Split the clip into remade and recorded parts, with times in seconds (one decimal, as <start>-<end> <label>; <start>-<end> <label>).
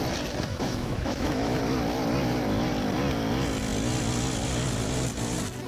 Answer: 0.0-0.5 recorded; 0.5-1.6 remade; 1.6-5.7 recorded